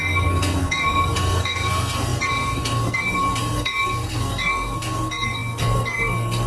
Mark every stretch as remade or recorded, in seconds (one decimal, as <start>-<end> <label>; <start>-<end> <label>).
0.0-6.5 remade